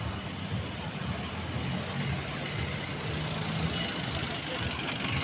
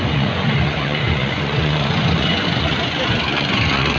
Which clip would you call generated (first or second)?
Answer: second